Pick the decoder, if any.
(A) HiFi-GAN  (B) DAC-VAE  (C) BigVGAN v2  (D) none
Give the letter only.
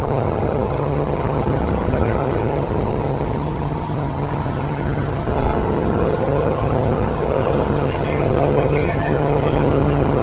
A